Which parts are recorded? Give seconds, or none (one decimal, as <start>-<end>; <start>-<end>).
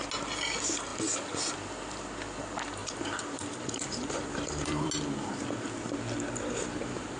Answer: 0.0-2.8; 4.9-7.2